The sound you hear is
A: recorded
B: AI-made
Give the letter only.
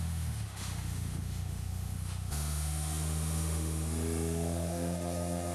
B